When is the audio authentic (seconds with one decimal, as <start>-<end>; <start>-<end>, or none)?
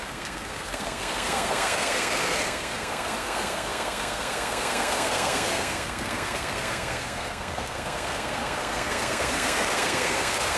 none